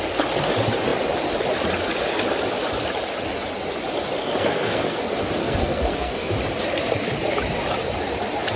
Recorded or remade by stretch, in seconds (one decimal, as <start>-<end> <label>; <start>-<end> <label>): 0.0-4.2 recorded; 4.2-5.0 remade; 5.0-5.4 recorded; 5.4-6.3 remade; 6.3-8.6 recorded